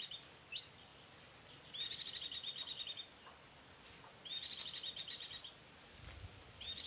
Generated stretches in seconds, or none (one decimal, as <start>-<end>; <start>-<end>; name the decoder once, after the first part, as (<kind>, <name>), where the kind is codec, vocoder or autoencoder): none